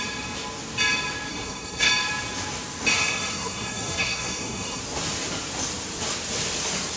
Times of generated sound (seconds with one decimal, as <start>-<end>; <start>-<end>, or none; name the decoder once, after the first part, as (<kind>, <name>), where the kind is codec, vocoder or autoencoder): 1.3-1.9 (codec, SNAC); 2.9-4.8